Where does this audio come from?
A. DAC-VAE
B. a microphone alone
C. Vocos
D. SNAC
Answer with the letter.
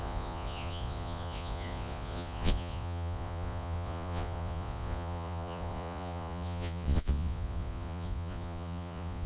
C